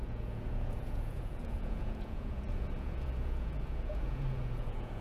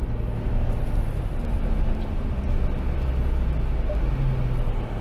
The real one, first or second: second